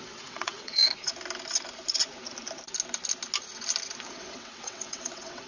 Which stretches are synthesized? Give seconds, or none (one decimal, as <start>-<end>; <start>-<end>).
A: 0.0-0.8; 4.1-5.5